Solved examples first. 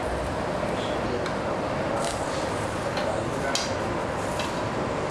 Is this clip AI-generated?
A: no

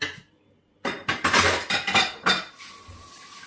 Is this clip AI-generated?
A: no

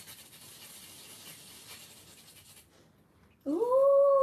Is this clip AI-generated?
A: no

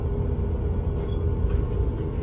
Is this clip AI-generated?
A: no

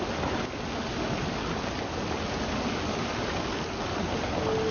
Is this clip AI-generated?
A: no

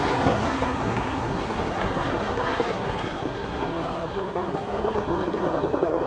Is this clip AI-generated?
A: yes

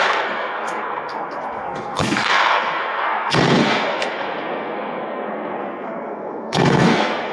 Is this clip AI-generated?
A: yes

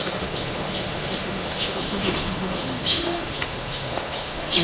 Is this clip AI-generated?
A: yes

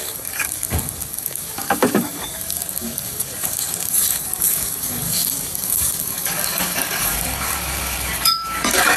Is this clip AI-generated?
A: yes